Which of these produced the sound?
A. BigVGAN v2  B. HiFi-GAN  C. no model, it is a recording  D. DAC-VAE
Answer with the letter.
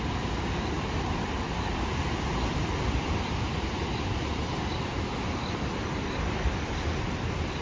C